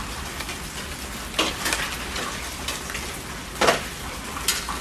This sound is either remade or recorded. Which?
recorded